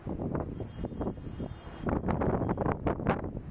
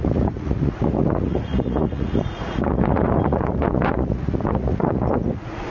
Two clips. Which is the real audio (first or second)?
first